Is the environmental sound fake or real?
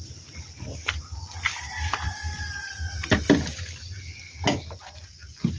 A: real